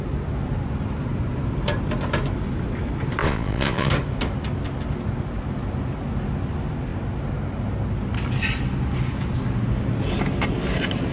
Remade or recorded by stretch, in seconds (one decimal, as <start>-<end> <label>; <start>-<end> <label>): 0.0-3.2 recorded; 3.2-3.9 remade; 3.9-11.1 recorded